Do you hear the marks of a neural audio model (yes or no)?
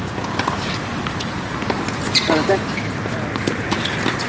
no